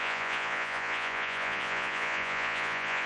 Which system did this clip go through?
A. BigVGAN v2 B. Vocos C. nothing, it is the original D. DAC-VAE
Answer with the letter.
B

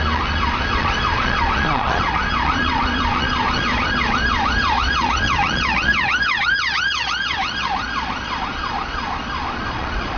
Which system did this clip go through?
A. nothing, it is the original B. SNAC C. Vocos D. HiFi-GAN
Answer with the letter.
C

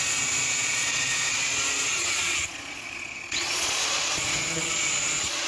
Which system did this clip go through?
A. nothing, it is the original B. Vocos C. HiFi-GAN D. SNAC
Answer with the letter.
B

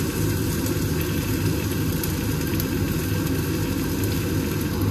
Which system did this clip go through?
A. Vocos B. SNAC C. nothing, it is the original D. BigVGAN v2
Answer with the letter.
C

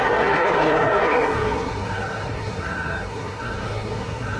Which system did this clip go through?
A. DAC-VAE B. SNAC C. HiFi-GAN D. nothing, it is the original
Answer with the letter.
B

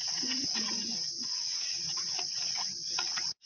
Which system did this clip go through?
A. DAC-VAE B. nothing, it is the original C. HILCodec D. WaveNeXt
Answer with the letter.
D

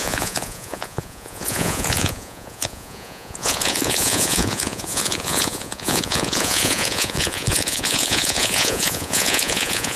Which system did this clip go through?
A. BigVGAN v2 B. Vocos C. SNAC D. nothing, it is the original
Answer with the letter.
B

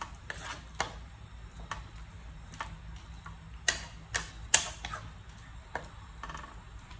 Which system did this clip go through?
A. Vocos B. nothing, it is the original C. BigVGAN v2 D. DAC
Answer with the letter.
B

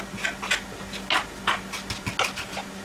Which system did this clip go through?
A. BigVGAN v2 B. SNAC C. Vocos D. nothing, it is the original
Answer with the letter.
D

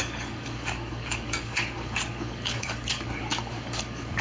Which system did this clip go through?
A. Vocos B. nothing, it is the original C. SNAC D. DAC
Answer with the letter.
D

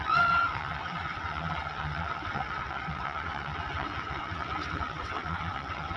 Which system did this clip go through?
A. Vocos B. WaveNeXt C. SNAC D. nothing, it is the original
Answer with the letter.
B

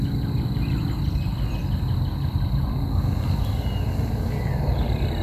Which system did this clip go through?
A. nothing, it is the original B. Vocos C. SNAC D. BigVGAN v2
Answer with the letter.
A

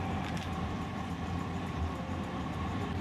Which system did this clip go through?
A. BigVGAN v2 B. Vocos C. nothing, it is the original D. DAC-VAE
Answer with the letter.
A